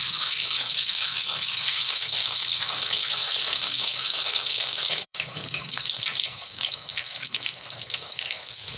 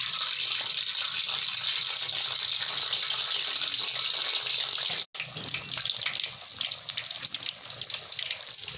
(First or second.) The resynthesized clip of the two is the first